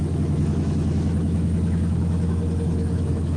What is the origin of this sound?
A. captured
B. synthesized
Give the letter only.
B